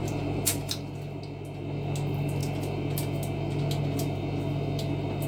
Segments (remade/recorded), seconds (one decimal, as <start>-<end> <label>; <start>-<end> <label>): 0.0-0.7 remade; 0.7-5.3 recorded